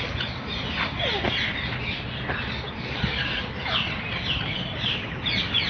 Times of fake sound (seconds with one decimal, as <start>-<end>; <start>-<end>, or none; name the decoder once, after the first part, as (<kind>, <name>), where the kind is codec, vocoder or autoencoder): none